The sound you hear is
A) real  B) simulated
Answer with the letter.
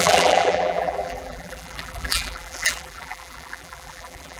B